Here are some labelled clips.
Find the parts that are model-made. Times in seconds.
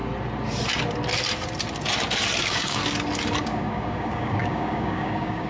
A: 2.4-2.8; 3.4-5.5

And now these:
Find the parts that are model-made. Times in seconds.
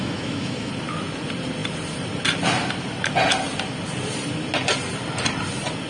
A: 0.0-0.7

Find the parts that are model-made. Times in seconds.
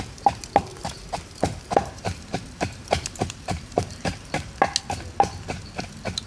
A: 0.7-4.5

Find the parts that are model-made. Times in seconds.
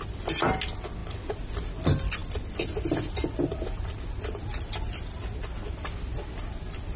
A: 1.0-1.7; 2.2-4.2; 5.6-6.5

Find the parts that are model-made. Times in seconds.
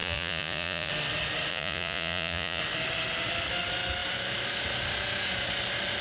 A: 0.0-0.9; 1.5-2.6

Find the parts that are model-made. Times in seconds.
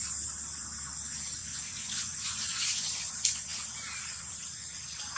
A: 1.4-3.1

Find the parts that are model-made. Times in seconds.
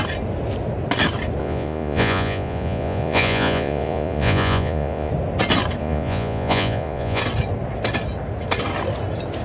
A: 1.4-5.1; 5.8-7.2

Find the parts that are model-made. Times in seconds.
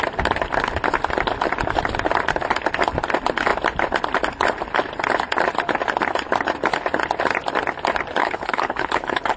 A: 8.2-9.4